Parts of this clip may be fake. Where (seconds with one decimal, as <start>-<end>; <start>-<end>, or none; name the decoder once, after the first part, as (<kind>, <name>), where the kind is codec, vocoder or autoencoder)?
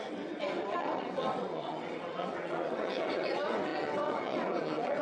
0.0-5.0 (vocoder, WaveNeXt)